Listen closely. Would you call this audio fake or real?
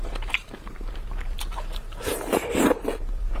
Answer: fake